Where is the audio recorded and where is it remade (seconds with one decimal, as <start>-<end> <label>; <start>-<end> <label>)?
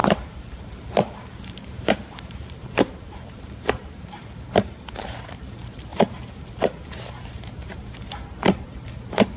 0.0-9.4 remade